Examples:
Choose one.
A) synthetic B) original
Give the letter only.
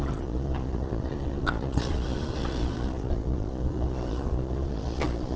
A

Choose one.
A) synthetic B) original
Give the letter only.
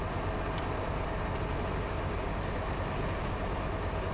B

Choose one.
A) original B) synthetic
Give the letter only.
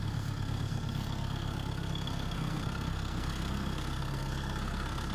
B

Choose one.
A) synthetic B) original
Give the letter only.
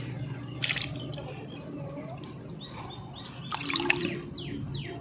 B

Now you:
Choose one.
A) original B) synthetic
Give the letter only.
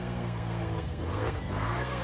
B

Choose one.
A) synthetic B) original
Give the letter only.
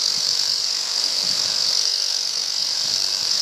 A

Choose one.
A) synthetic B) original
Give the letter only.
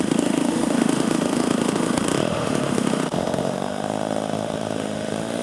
A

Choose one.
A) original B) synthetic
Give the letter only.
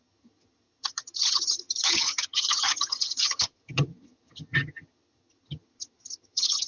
B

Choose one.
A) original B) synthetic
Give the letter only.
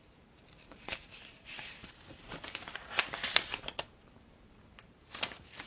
B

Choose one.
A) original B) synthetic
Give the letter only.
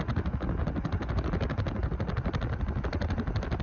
A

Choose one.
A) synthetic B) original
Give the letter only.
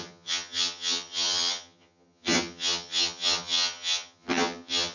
A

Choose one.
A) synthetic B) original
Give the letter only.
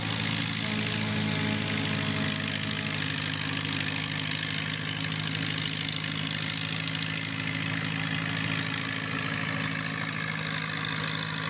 B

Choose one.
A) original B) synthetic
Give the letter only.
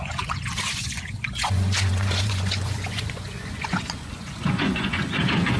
B